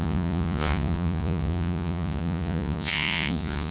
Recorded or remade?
remade